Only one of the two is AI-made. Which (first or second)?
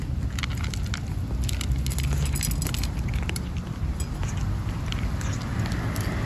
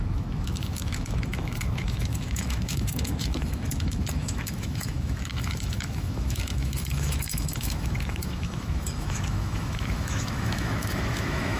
second